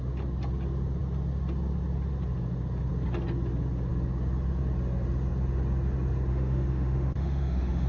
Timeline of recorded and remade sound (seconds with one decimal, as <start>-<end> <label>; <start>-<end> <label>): 0.0-6.3 recorded; 6.3-7.9 remade

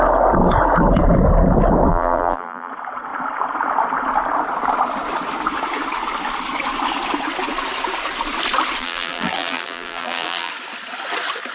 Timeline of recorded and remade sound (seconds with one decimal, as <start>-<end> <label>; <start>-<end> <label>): 0.0-1.9 recorded; 1.9-2.7 remade; 2.7-8.8 recorded; 8.8-10.5 remade; 10.5-11.5 recorded

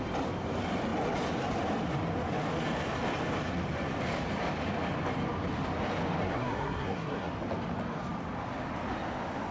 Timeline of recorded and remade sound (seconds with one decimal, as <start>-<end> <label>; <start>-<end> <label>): 0.0-6.2 recorded; 6.2-7.3 remade; 7.3-9.5 recorded

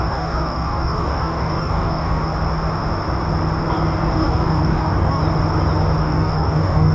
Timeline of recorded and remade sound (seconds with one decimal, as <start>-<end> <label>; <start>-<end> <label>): 0.0-2.3 remade; 2.3-4.1 recorded; 4.1-5.2 remade; 5.2-6.0 recorded; 6.0-6.9 remade